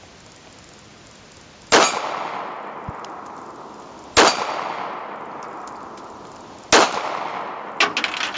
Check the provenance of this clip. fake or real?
real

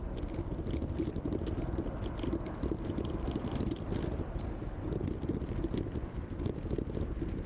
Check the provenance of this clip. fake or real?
real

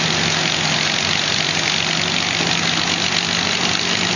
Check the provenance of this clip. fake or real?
real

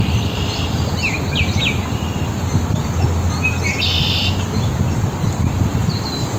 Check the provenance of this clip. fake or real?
real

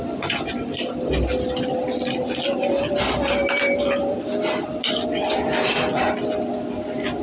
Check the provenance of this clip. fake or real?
real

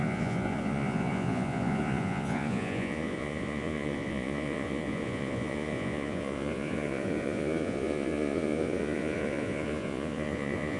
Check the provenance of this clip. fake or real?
fake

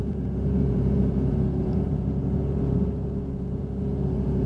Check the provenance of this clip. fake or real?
fake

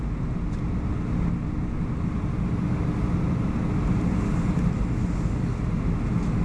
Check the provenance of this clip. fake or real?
real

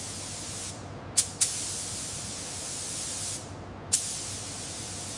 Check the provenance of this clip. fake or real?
real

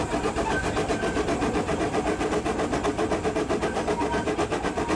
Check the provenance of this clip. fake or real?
real